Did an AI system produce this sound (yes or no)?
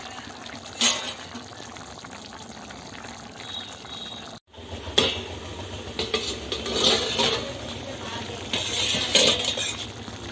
no